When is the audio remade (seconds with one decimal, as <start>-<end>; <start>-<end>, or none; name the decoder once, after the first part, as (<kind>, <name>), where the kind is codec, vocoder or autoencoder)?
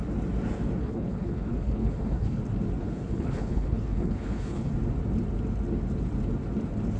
0.8-2.4 (codec, HILCodec); 2.8-4.7